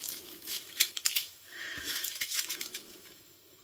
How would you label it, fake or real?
fake